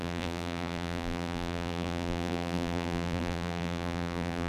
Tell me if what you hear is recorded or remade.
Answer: remade